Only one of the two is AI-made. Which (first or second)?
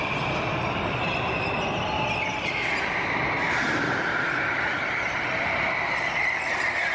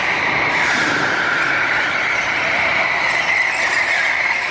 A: second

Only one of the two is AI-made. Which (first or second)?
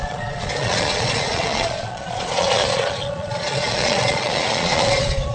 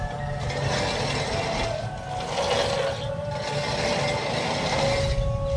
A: first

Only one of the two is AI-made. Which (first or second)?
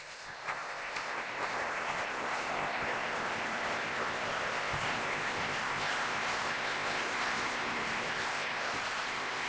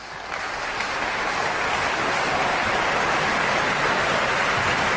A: first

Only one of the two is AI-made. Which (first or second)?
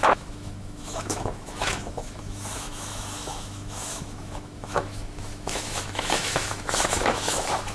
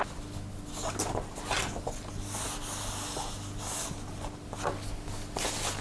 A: first